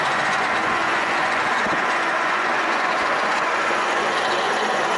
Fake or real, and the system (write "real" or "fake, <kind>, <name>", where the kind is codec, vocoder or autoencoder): fake, vocoder, Vocos